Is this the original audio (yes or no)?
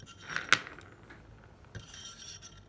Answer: yes